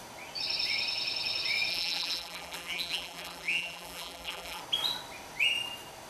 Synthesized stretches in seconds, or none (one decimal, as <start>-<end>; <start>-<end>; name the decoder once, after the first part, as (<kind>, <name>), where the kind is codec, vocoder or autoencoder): 1.7-4.6 (vocoder, BigVGAN v2)